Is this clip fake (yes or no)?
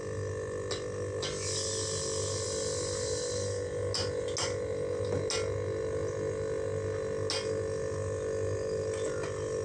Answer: no